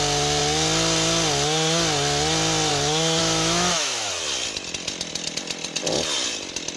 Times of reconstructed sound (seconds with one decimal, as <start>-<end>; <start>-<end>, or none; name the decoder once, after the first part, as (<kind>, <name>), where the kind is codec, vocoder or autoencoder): 3.2-4.1 (autoencoder, DAC-VAE)